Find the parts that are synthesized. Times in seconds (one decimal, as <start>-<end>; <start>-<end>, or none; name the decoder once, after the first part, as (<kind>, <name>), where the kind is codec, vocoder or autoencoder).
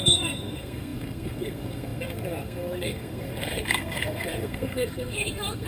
0.0-5.7 (codec, SNAC)